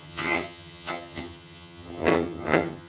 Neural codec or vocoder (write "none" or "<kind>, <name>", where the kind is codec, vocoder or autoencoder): vocoder, HiFi-GAN